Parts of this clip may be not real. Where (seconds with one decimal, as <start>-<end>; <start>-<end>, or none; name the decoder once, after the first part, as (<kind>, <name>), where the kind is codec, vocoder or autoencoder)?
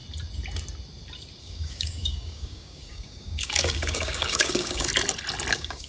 1.4-4.9 (codec, DAC); 5.5-5.9